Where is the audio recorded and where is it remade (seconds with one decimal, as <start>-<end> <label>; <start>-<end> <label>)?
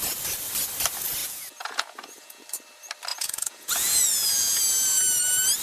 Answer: 0.0-1.2 recorded; 1.2-2.4 remade; 2.4-3.1 recorded; 3.1-4.6 remade; 4.6-5.6 recorded